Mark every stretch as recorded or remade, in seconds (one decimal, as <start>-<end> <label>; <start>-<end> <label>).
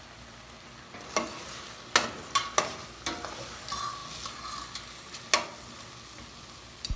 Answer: 0.0-7.0 recorded